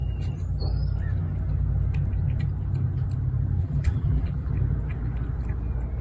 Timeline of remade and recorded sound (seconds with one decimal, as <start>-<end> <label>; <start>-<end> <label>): 0.0-3.6 recorded; 3.6-4.5 remade; 4.5-6.0 recorded